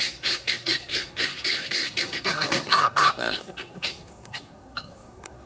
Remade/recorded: remade